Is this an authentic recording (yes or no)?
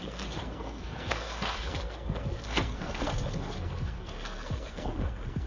no